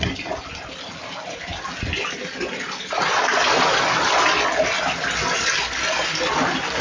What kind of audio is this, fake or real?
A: real